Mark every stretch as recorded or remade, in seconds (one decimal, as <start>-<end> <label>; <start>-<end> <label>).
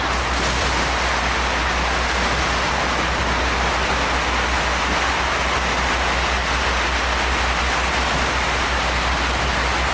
0.0-9.9 recorded